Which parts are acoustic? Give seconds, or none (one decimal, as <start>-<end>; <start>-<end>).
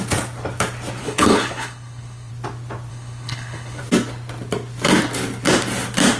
0.0-1.0; 2.3-2.9; 3.8-6.2